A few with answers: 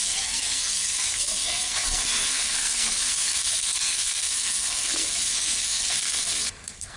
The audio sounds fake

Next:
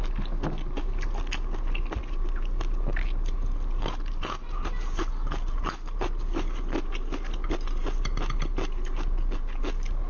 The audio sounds real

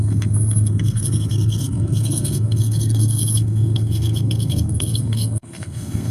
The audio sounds fake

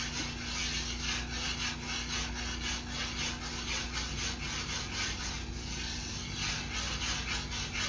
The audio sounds real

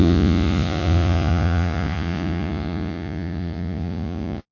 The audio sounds fake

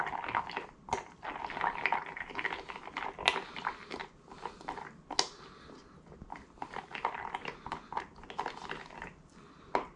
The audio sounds real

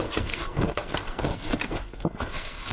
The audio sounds fake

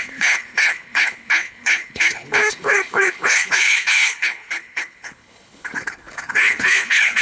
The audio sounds fake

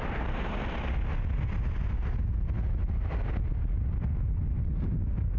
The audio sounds real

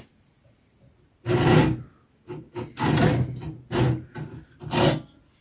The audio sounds real